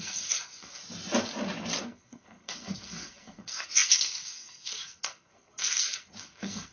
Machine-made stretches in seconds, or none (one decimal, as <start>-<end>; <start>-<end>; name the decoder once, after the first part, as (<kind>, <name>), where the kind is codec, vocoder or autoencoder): 0.0-0.8 (codec, SNAC); 1.8-6.7